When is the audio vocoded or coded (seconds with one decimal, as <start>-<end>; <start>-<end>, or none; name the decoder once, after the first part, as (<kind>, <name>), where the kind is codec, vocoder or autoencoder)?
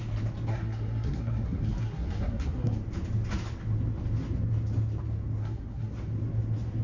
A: 0.5-2.8 (codec, SNAC); 5.4-5.9